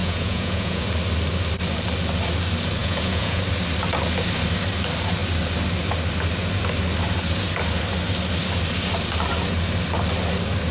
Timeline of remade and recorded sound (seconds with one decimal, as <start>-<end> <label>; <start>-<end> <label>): 0.0-0.9 remade; 0.9-2.8 recorded; 2.8-3.4 remade; 3.4-10.7 recorded